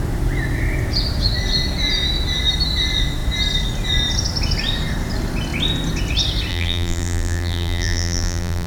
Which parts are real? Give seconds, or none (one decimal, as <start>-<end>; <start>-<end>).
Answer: 0.0-6.5